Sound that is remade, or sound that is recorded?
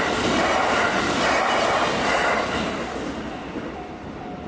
recorded